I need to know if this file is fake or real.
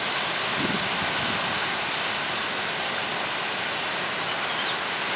real